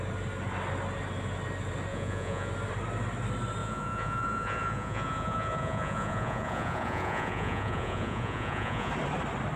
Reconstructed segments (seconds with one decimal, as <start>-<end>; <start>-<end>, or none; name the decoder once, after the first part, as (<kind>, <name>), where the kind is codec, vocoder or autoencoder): 1.9-2.5 (vocoder, Vocos); 3.6-8.9